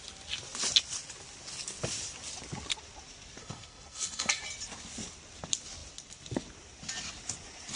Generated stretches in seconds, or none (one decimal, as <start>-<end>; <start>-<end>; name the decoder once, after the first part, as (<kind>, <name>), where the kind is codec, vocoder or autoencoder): 3.4-4.4 (codec, SNAC)